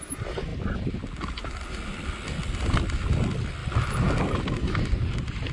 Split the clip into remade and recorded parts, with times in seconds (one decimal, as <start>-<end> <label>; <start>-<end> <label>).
0.0-5.5 recorded